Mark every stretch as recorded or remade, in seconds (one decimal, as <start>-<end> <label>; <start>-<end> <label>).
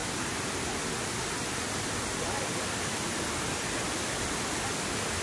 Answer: 0.0-5.2 recorded